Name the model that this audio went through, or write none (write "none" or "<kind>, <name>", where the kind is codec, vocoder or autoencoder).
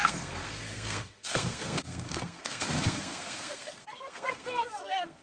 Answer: codec, SNAC